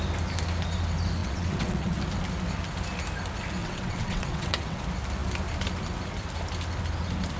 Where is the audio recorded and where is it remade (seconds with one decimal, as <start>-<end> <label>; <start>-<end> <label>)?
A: 0.0-1.2 recorded; 1.2-2.0 remade; 2.0-3.6 recorded; 3.6-4.8 remade; 4.8-7.4 recorded